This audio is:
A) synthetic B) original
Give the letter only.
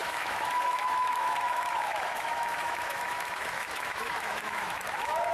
A